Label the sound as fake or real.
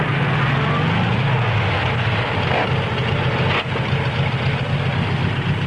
real